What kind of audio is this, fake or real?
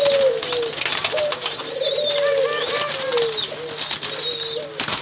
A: real